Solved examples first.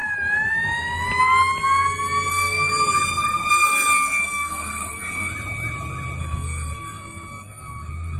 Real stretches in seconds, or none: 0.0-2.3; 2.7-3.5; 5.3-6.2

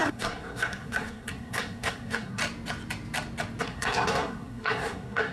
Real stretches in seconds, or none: 2.4-3.6

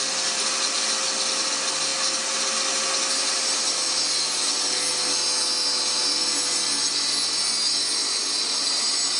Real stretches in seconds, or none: 0.0-9.2

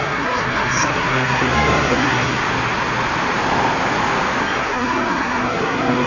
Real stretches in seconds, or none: 2.4-4.4

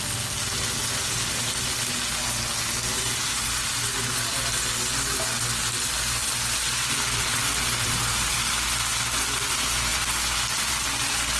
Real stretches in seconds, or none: 0.0-11.4

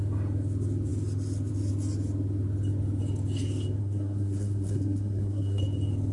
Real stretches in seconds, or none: 0.0-3.8; 5.6-6.1

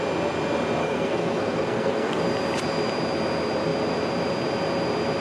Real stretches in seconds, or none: 0.0-0.8; 2.2-5.2

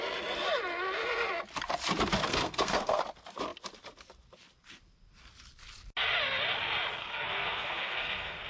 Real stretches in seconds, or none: 0.0-2.3; 3.0-7.0